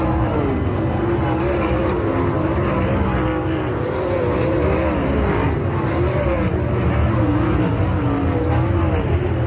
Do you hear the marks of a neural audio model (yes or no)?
no